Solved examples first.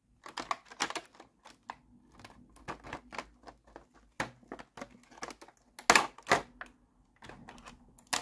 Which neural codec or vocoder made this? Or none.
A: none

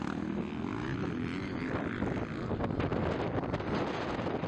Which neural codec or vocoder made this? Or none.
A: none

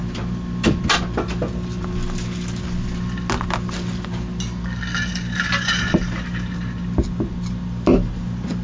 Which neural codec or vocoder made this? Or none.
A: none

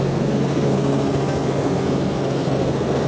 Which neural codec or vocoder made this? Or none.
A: codec, SNAC